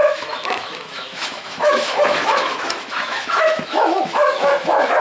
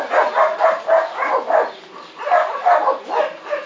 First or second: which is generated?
first